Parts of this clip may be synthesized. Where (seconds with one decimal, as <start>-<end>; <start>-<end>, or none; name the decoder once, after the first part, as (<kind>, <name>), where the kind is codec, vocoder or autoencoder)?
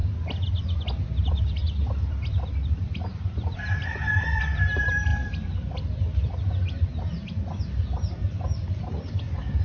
1.2-9.6 (vocoder, BigVGAN v2)